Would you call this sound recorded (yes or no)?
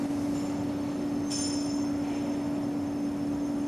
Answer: yes